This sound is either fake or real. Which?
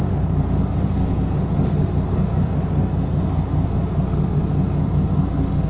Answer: fake